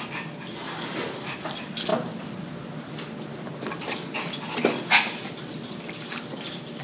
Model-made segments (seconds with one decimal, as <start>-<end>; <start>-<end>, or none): none